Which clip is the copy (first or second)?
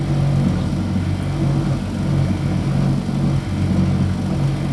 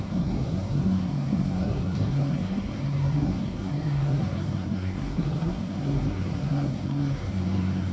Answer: second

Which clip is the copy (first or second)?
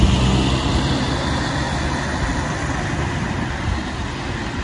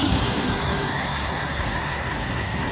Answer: second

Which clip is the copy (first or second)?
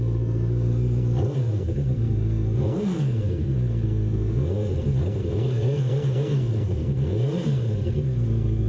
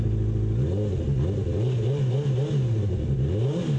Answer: first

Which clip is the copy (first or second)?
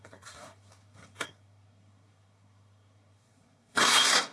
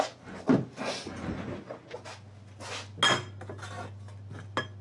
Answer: first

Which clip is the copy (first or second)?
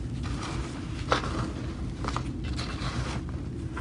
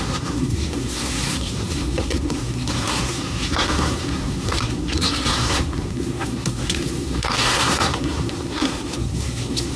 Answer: second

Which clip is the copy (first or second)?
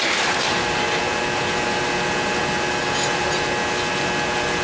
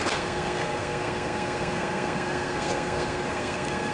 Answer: second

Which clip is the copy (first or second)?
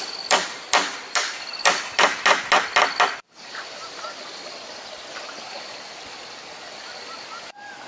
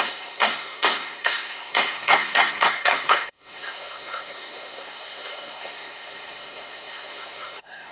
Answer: second